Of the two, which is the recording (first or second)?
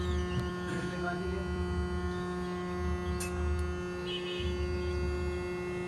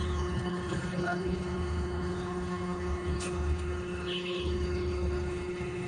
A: first